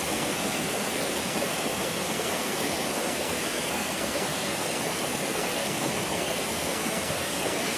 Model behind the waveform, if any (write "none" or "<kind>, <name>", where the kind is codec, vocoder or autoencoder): codec, SNAC